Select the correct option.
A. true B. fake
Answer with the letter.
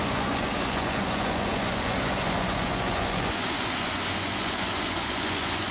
B